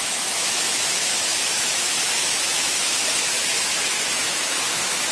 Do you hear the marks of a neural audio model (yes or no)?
yes